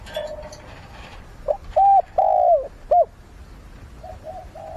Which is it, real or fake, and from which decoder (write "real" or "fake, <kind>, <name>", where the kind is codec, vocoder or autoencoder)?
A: real